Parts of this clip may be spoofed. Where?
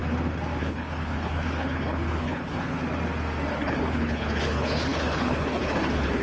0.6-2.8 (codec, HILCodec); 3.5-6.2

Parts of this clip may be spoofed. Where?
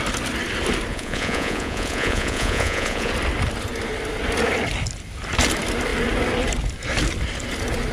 0.9-3.1 (vocoder, Vocos)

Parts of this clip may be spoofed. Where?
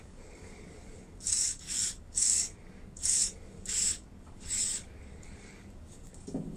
0.0-6.6 (codec, DAC)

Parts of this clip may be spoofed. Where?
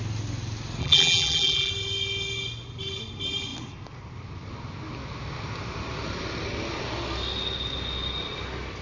0.8-1.7 (vocoder, BigVGAN v2)